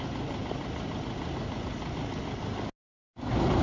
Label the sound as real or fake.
real